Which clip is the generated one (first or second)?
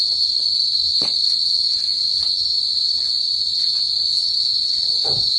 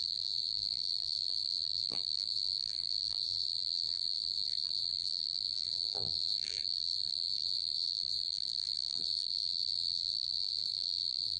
second